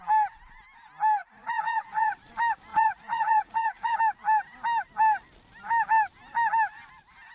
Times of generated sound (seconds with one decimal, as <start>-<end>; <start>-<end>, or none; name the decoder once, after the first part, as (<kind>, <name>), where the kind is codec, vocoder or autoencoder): 1.2-2.3 (vocoder, Vocos); 2.7-4.0